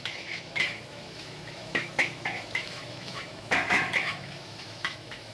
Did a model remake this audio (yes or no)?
yes